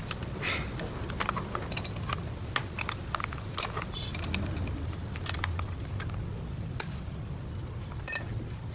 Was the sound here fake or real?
real